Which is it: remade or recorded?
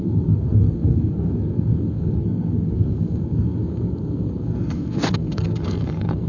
remade